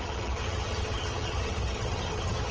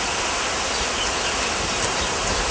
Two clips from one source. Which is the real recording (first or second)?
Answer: second